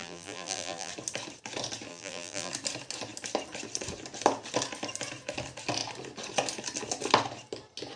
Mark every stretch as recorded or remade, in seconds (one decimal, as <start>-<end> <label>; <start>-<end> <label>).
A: 0.0-0.9 remade; 0.9-1.9 recorded; 1.9-2.5 remade; 2.5-8.0 recorded